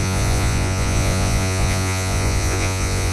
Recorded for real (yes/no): no